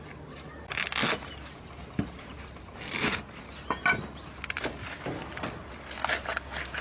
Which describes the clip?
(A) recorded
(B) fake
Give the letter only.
A